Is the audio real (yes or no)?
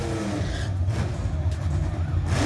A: yes